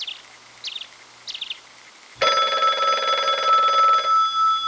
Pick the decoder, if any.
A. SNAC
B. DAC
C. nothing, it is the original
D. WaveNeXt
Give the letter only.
C